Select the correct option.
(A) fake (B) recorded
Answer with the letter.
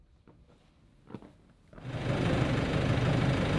B